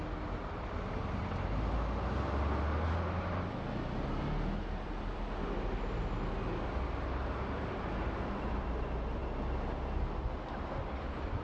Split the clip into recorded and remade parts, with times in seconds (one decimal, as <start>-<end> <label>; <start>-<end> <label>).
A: 0.0-11.4 recorded